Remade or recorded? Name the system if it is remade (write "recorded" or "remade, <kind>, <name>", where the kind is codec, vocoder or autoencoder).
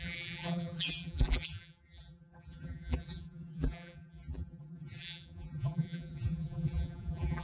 remade, vocoder, BigVGAN v2